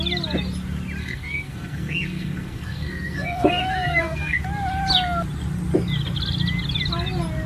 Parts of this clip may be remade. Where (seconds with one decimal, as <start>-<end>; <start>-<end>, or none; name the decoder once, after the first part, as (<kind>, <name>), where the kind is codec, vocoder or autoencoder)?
1.0-4.4 (codec, SNAC)